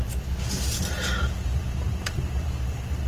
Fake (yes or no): no